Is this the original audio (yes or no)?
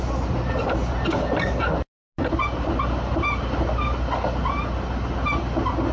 yes